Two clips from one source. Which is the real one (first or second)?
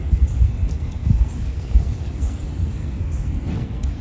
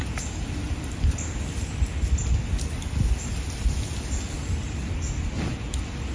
second